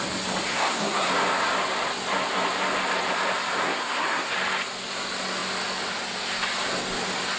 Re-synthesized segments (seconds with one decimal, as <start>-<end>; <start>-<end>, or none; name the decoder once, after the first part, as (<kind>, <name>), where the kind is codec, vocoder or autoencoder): 0.5-1.1 (codec, SNAC); 3.6-4.3